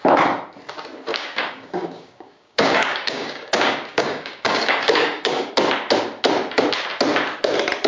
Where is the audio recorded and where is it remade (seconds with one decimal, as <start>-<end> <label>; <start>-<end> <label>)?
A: 0.0-1.1 recorded; 1.1-5.5 remade; 5.5-7.9 recorded